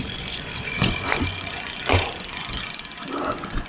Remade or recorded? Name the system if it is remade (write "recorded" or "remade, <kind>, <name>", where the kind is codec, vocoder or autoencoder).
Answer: remade, vocoder, Vocos